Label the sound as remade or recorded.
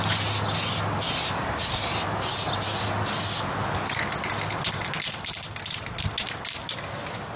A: recorded